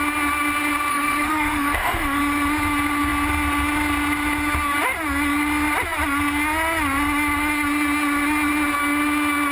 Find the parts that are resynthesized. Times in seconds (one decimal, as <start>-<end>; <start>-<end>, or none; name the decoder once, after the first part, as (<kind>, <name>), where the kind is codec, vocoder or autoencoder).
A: 0.9-2.2 (autoencoder, DAC-VAE)